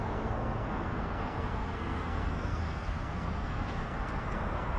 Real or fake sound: fake